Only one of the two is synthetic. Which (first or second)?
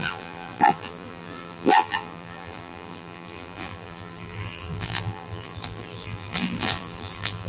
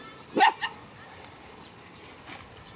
first